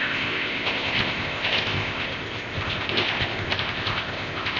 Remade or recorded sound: remade